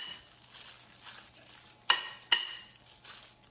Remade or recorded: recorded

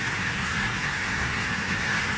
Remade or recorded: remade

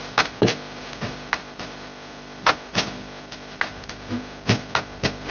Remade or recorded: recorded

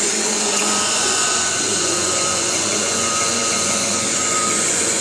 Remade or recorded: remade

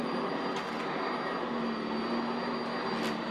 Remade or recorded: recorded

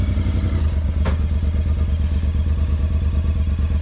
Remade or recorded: recorded